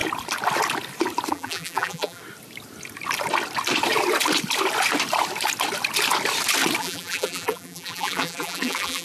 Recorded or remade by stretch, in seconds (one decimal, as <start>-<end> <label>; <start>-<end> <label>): 0.0-1.3 recorded; 1.3-2.2 remade; 2.2-6.8 recorded; 6.8-9.0 remade